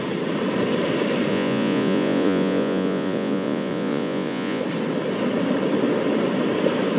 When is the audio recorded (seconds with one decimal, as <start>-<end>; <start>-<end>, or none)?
0.0-1.3; 4.6-7.0